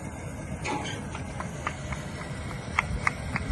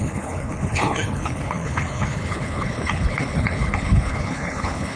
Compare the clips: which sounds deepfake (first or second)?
second